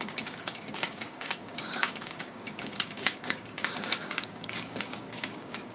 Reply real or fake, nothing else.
fake